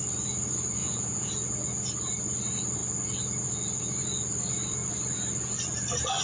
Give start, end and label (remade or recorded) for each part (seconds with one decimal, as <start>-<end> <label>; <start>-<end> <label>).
0.0-0.8 recorded; 0.8-1.3 remade; 1.3-6.2 recorded